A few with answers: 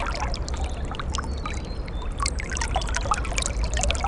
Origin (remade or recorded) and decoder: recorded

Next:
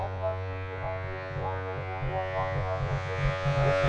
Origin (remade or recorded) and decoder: remade, vocoder, Vocos